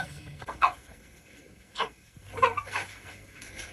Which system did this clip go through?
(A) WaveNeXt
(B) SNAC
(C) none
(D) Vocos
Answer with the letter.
B